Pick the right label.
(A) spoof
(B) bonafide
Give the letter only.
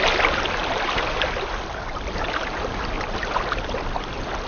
B